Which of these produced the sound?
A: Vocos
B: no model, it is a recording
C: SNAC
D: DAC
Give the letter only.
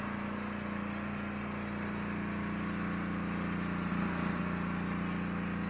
B